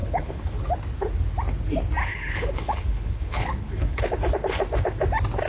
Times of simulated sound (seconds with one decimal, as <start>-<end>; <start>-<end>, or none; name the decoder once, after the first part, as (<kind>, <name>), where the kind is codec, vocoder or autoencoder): 0.0-0.6 (codec, HILCodec); 2.0-4.1